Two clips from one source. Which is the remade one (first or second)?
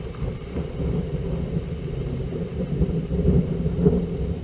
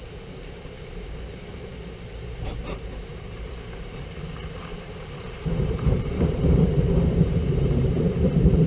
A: second